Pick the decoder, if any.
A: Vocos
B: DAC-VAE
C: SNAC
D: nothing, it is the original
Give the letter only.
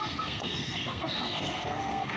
C